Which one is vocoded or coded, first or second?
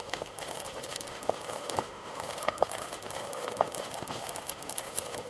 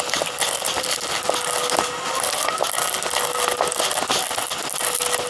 first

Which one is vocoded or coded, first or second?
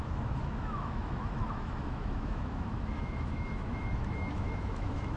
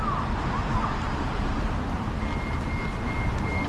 first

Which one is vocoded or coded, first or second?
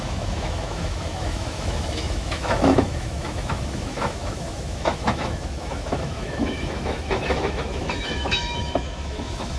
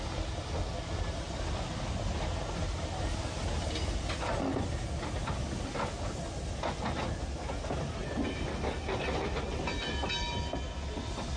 first